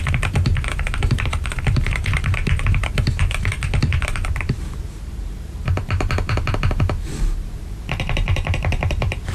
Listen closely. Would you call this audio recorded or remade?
remade